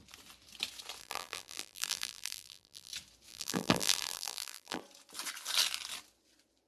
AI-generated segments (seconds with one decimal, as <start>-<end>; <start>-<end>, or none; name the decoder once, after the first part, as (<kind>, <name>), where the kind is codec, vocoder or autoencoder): 1.0-2.9 (vocoder, BigVGAN v2); 3.3-4.8